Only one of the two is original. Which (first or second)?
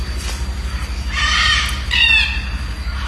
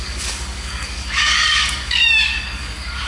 first